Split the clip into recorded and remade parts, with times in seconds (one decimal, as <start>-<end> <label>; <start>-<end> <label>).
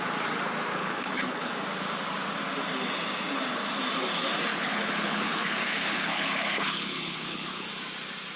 0.0-0.7 recorded; 0.7-1.5 remade; 1.5-4.5 recorded; 4.5-7.7 remade; 7.7-8.4 recorded